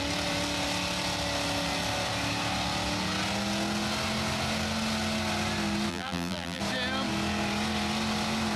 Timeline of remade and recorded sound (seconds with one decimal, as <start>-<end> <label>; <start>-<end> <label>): 0.0-5.9 recorded; 5.9-6.6 remade; 6.6-8.6 recorded